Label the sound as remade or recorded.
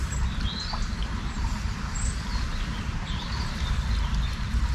recorded